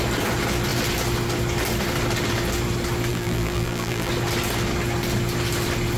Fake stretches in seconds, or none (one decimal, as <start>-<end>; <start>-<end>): 3.1-4.1